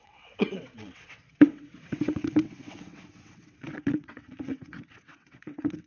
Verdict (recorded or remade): remade